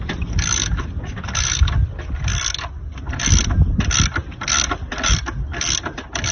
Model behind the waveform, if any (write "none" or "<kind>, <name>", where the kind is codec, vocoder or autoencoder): none